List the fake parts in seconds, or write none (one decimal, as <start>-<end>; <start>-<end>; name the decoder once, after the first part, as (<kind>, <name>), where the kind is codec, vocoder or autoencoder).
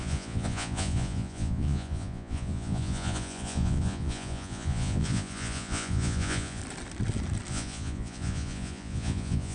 0.0-6.6 (vocoder, Vocos); 7.5-9.5